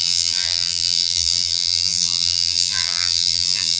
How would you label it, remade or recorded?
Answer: remade